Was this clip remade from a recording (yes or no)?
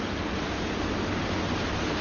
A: no